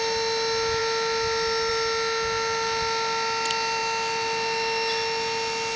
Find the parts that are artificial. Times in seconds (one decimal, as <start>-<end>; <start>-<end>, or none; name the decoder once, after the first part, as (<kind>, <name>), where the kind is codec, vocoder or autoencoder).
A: none